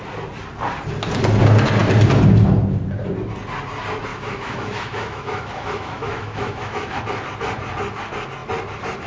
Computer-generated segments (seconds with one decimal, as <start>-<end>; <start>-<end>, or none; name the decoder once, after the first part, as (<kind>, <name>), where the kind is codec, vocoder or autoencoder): 4.1-7.0 (autoencoder, DAC-VAE)